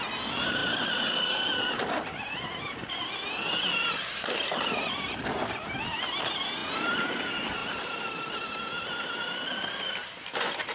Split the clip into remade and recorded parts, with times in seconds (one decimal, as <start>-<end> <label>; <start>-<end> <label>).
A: 0.0-7.6 recorded; 7.6-8.3 remade; 8.3-10.7 recorded